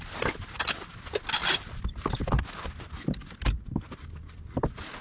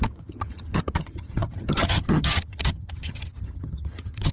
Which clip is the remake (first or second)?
second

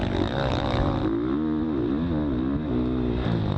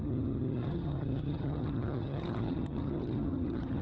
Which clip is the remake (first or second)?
second